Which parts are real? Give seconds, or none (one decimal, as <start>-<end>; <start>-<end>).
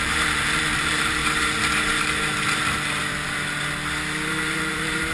1.2-4.3